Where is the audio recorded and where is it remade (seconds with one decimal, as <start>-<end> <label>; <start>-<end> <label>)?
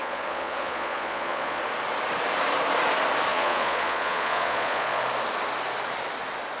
0.0-1.6 remade; 1.6-3.3 recorded; 3.3-5.0 remade; 5.0-6.6 recorded